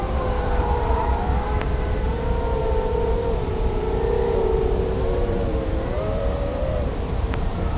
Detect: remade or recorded remade